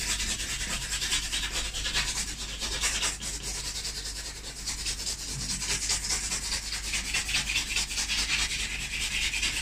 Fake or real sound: real